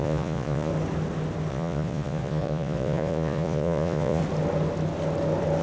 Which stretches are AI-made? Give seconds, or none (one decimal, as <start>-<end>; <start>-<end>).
0.0-0.7; 1.5-4.2